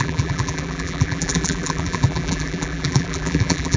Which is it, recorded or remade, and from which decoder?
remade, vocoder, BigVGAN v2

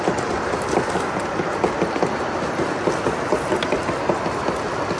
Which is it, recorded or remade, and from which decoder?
recorded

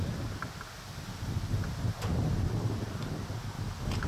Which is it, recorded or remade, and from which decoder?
recorded